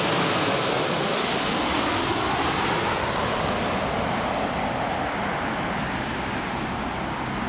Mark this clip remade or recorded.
recorded